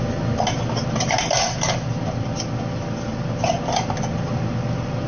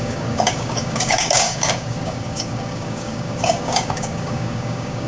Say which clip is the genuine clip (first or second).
first